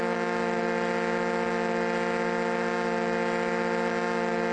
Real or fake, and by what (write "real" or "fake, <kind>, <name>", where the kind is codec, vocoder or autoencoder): real